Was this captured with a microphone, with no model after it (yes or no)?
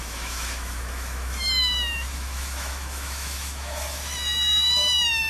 no